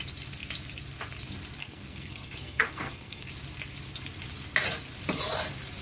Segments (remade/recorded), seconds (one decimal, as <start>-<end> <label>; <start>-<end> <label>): 0.0-1.6 recorded; 1.6-3.3 remade; 3.3-5.8 recorded